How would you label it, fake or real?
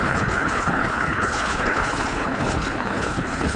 fake